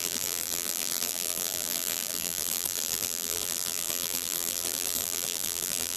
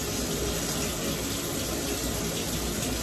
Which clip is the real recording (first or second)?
second